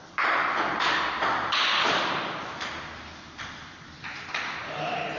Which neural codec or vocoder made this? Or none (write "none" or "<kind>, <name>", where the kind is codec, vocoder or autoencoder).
vocoder, BigVGAN v2